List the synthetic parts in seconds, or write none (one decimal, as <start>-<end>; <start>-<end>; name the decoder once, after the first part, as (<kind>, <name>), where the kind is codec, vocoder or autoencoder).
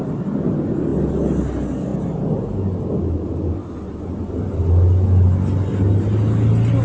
none